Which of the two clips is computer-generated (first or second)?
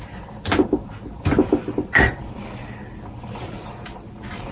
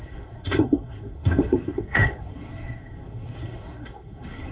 second